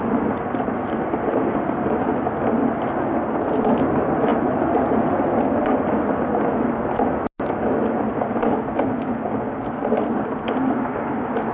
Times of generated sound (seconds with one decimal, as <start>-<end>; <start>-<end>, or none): none